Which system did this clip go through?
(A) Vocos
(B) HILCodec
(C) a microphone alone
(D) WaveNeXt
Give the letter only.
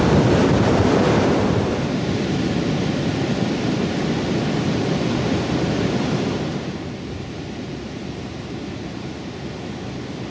C